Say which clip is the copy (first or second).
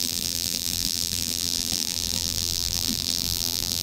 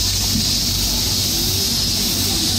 first